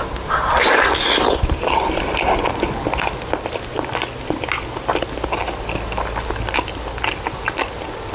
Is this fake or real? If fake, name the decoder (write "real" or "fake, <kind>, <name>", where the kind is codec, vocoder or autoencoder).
real